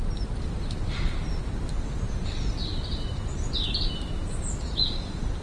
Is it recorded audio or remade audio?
recorded